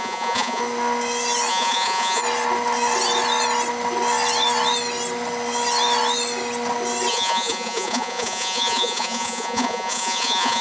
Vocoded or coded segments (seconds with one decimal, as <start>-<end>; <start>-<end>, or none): 0.0-0.6; 1.5-2.2; 7.1-10.6